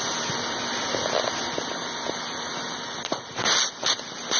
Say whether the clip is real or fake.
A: real